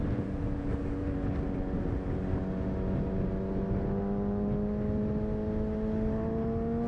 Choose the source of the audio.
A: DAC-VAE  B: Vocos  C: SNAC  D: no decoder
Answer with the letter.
D